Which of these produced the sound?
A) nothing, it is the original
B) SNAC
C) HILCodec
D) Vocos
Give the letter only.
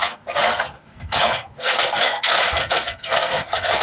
B